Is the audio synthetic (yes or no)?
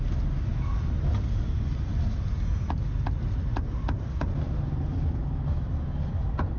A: no